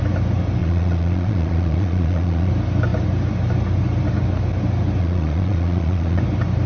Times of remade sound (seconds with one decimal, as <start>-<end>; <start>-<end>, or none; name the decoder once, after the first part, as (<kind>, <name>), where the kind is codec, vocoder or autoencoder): 0.6-2.5 (vocoder, Vocos); 5.0-6.2